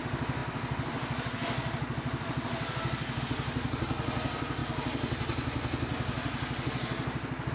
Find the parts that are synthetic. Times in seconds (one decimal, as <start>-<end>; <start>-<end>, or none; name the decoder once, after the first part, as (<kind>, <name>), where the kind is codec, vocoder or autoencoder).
none